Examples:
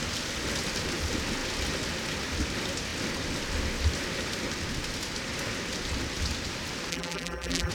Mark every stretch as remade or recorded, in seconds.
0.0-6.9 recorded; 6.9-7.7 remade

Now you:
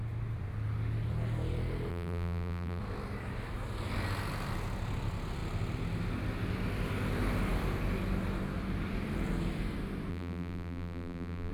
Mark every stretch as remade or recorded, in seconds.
0.0-1.9 recorded; 1.9-2.8 remade; 2.8-10.1 recorded; 10.1-11.5 remade

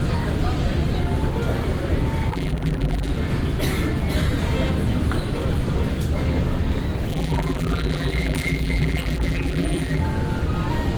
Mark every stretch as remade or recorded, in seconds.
0.0-2.3 recorded; 2.3-3.1 remade; 3.1-7.1 recorded; 7.1-10.0 remade; 10.0-11.0 recorded

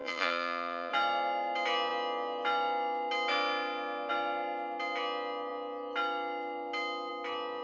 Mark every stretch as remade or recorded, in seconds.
0.0-0.9 remade; 0.9-7.6 recorded

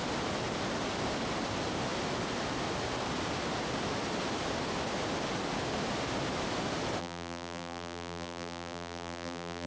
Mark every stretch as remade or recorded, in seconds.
0.0-7.0 recorded; 7.0-9.7 remade

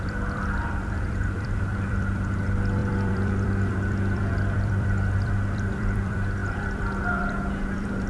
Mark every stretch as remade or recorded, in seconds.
0.0-8.1 remade

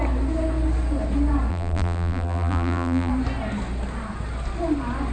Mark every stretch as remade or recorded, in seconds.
0.0-1.5 recorded; 1.5-3.1 remade; 3.1-5.1 recorded